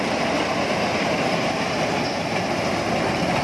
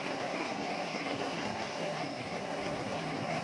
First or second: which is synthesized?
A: second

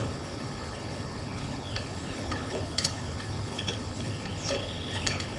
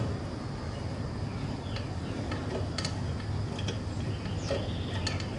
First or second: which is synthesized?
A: first